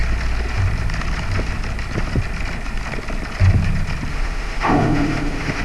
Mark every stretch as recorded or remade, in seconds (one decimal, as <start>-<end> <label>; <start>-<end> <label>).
0.0-4.1 recorded; 4.1-5.6 remade